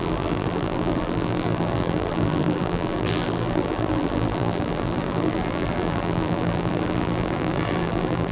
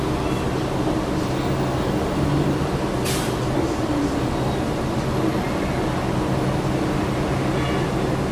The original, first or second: second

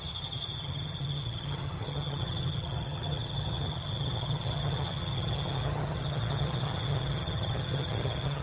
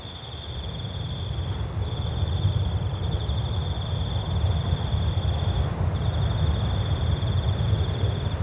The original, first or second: second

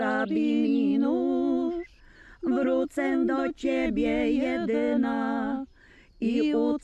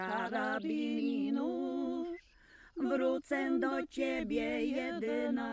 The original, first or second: first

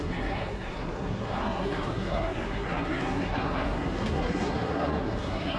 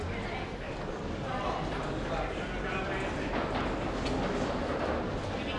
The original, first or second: second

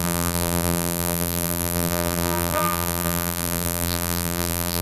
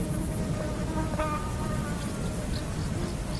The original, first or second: second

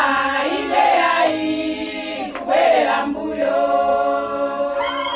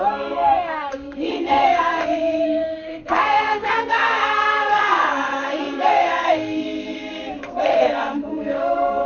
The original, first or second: first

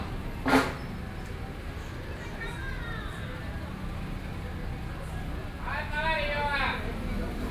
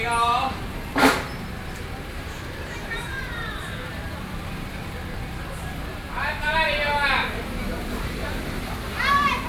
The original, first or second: first